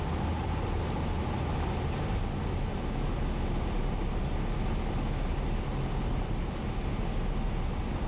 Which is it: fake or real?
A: real